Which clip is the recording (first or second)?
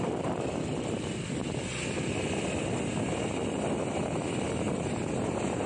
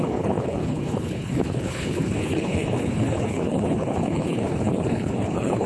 first